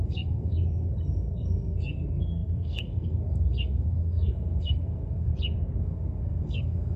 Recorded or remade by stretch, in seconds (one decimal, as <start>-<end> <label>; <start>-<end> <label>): 0.0-5.3 remade; 5.3-5.8 recorded; 5.8-7.0 remade

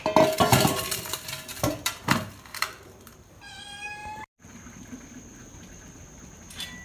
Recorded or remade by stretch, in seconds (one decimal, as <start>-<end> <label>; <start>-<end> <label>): 0.0-1.5 recorded; 1.5-3.3 remade; 3.3-4.0 recorded; 4.0-4.6 remade; 4.6-6.8 recorded

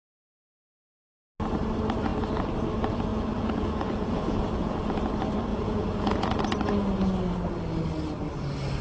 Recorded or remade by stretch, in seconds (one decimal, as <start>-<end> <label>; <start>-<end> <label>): 0.0-3.1 recorded; 3.1-4.8 remade; 4.8-5.5 recorded; 5.5-6.4 remade; 6.4-8.8 recorded

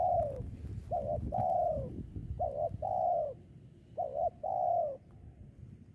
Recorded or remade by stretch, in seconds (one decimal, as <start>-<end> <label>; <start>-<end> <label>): 0.0-5.9 remade

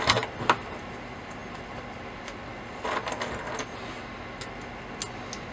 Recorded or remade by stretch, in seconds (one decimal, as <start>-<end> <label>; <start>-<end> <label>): 0.0-5.5 recorded

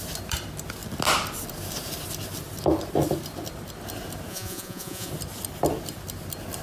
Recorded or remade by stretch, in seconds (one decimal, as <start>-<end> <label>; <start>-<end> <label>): 0.0-4.3 recorded; 4.3-5.1 remade; 5.1-6.6 recorded

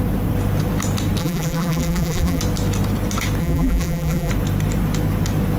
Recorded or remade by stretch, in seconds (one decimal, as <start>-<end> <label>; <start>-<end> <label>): 0.0-1.2 recorded; 1.2-2.4 remade; 2.4-3.4 recorded; 3.4-4.3 remade; 4.3-5.6 recorded